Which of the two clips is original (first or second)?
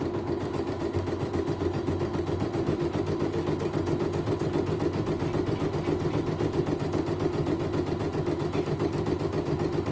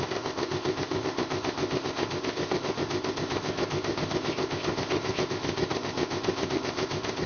first